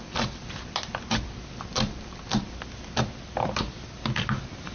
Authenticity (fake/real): fake